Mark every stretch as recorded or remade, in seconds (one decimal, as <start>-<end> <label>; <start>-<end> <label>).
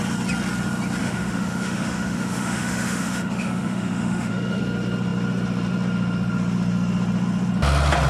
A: 0.0-1.0 recorded; 1.0-4.6 remade; 4.6-8.1 recorded